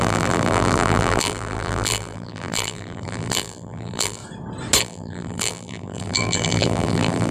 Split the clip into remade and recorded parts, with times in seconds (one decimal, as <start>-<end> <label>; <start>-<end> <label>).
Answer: 0.0-4.2 remade; 4.2-4.8 recorded; 4.8-7.3 remade